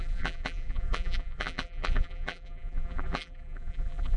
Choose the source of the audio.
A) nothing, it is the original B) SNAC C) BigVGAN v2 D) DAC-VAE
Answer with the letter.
C